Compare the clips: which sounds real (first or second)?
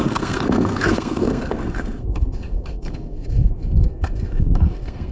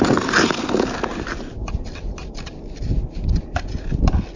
second